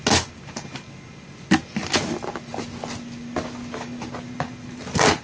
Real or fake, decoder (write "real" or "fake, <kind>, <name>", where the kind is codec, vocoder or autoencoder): real